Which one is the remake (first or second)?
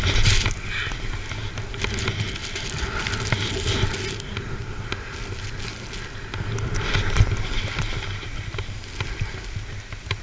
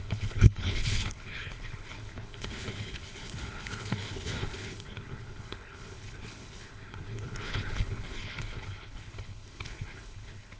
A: second